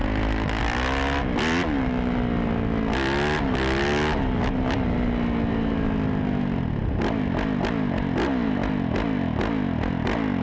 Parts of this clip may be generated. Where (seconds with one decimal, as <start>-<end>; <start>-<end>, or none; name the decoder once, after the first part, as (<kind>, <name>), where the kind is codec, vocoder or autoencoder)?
none